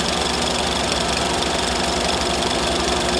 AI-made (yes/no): yes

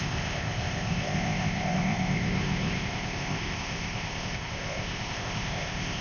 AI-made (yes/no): yes